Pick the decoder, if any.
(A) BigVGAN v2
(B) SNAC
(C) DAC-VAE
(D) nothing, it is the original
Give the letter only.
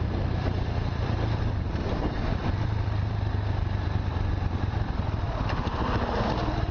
A